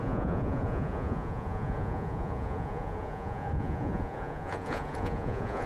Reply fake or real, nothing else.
fake